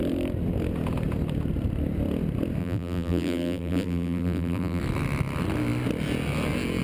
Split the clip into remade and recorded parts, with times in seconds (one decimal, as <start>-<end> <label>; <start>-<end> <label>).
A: 0.0-2.6 recorded; 2.6-4.8 remade; 4.8-6.8 recorded